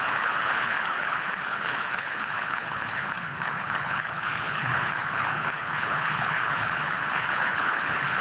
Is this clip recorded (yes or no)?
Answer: no